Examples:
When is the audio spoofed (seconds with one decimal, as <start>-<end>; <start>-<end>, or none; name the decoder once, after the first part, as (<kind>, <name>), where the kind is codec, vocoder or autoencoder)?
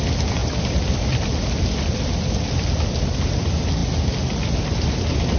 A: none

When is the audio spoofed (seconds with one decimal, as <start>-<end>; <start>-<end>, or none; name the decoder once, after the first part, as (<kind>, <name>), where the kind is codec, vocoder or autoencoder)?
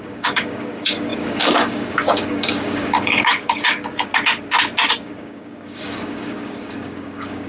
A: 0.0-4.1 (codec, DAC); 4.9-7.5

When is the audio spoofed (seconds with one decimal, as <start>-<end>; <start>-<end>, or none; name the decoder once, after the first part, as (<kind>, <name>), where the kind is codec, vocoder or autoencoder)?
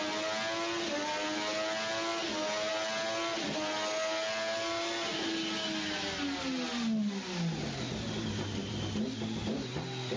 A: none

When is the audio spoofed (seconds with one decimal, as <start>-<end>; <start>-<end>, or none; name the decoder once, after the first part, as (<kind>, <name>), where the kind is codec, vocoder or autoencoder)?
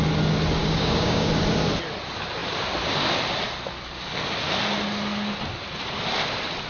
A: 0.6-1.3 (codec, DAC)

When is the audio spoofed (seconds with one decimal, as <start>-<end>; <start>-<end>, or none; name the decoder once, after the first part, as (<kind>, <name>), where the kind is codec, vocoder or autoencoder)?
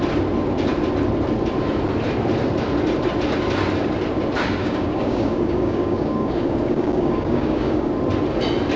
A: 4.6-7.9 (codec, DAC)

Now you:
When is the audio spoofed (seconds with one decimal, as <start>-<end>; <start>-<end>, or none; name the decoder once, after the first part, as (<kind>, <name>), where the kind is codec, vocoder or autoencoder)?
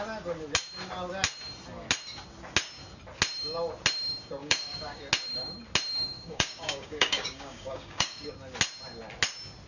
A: 4.4-5.0 (codec, DAC); 5.9-8.3